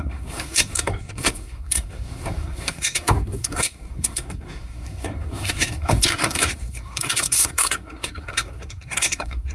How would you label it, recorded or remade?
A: remade